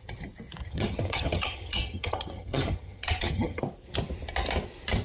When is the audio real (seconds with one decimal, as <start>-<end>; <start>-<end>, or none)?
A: 0.0-0.6; 3.6-5.0

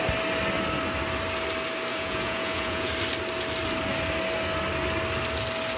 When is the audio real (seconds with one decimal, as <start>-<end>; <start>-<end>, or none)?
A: 0.0-1.9; 2.9-5.8

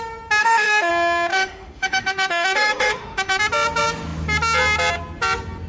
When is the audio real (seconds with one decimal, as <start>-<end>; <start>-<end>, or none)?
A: 0.0-0.4; 0.9-1.3; 3.4-5.7

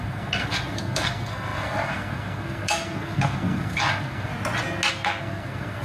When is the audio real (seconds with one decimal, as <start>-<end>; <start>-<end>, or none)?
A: 4.3-4.9

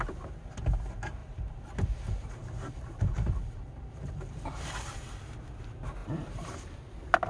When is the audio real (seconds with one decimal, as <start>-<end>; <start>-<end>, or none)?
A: 0.0-1.2; 5.2-6.0; 6.7-7.3

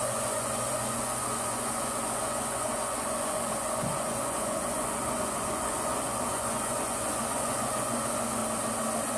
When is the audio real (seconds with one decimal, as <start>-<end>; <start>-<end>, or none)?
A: 8.4-9.2